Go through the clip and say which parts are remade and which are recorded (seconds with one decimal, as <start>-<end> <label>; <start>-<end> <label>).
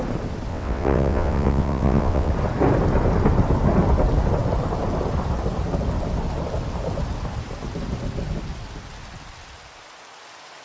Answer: 0.0-0.5 recorded; 0.5-2.3 remade; 2.3-10.6 recorded